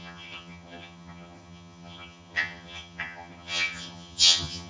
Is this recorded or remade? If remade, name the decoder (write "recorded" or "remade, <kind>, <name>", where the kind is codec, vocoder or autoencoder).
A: remade, vocoder, HiFi-GAN